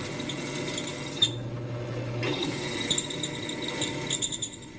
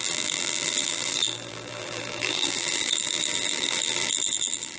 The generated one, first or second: second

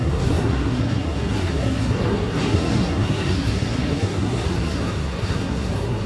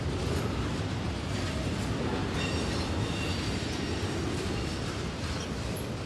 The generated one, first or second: first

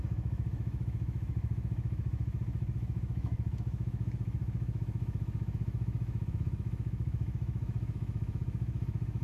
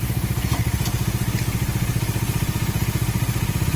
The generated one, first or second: first